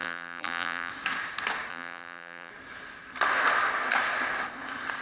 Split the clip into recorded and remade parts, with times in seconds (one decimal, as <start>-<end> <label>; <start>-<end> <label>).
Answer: 0.0-0.9 remade; 0.9-1.7 recorded; 1.7-2.5 remade; 2.5-5.0 recorded